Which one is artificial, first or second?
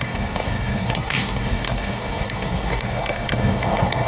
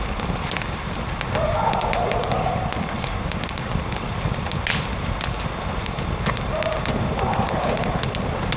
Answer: first